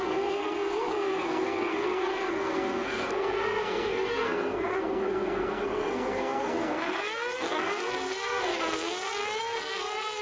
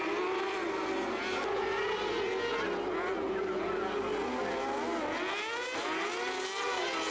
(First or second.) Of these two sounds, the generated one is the first